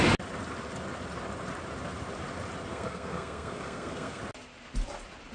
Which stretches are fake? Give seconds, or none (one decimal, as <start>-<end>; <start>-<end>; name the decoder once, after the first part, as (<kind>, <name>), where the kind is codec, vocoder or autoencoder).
2.7-4.2 (codec, SNAC)